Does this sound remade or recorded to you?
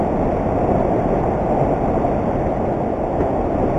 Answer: recorded